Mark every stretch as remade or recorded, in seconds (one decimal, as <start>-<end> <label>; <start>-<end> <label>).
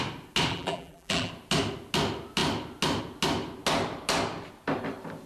0.0-0.5 recorded; 0.5-1.3 remade; 1.3-5.3 recorded